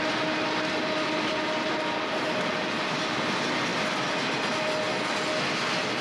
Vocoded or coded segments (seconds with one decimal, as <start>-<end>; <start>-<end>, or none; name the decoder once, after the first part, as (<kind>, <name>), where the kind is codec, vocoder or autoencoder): none